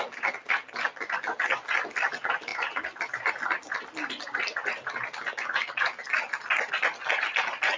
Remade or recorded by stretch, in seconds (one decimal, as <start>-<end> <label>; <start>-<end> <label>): 0.0-7.8 recorded